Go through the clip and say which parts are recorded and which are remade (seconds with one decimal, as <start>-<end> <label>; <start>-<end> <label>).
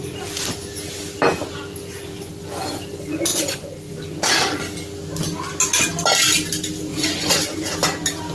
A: 0.0-3.3 recorded; 3.3-3.9 remade; 3.9-6.9 recorded; 6.9-7.7 remade; 7.7-8.3 recorded